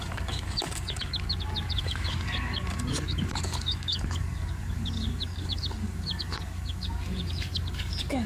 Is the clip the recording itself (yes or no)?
no